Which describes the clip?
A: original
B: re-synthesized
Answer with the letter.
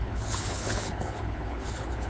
B